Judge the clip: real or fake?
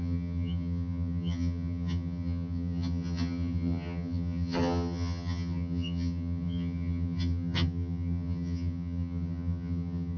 fake